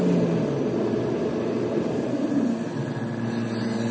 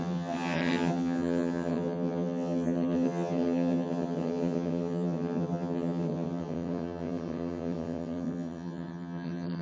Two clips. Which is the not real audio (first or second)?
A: second